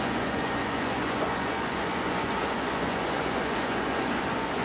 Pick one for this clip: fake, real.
fake